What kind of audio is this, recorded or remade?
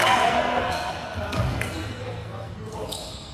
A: remade